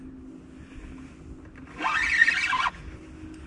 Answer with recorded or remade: recorded